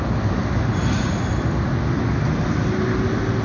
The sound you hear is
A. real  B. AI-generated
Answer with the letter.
A